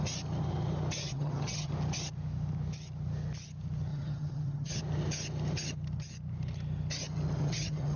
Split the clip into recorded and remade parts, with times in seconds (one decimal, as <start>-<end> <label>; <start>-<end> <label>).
0.0-1.0 recorded; 1.0-1.7 remade; 1.7-3.9 recorded; 3.9-4.8 remade; 4.8-7.4 recorded; 7.4-8.0 remade